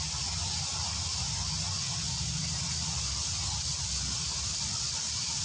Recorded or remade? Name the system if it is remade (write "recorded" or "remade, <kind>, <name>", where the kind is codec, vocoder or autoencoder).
recorded